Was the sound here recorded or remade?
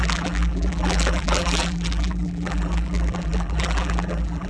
remade